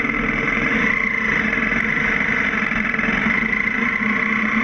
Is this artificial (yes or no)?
no